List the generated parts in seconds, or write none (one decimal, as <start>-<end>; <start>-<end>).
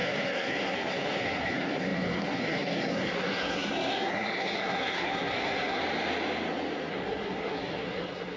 0.0-5.8; 6.9-8.4